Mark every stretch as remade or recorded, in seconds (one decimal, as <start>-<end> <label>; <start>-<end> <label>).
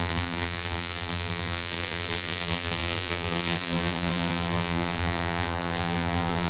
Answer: 0.0-6.5 remade